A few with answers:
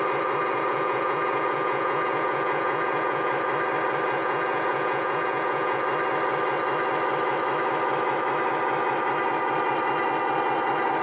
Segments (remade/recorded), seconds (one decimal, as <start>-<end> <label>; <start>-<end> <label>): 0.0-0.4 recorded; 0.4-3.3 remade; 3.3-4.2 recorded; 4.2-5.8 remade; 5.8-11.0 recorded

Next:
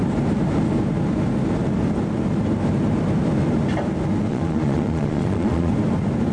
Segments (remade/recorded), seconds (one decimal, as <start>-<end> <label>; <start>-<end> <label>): 0.0-4.3 recorded; 4.3-5.7 remade; 5.7-6.3 recorded

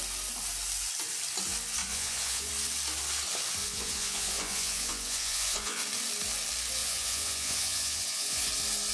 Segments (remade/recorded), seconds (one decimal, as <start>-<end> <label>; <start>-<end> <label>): 0.0-1.8 recorded; 1.8-2.5 remade; 2.5-3.6 recorded; 3.6-5.8 remade; 5.8-6.8 recorded; 6.8-8.5 remade; 8.5-8.9 recorded

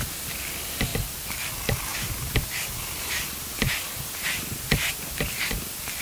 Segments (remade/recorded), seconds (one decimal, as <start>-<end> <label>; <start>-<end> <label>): 0.0-6.0 recorded

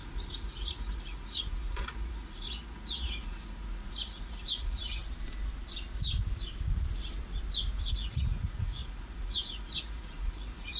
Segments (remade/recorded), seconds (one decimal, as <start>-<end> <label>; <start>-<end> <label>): 0.0-5.0 remade; 5.0-7.9 recorded; 7.9-10.8 remade